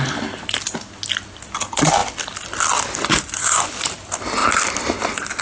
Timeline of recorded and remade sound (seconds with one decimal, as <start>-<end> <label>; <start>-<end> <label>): 0.0-3.1 recorded; 3.1-3.7 remade; 3.7-5.4 recorded